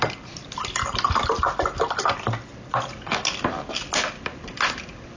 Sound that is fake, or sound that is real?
real